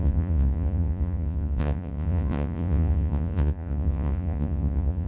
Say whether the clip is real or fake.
fake